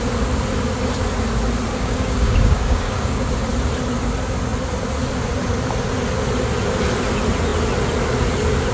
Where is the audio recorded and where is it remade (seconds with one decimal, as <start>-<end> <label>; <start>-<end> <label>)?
0.0-1.7 recorded; 1.7-3.3 remade; 3.3-8.7 recorded